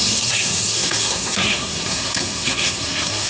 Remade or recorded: remade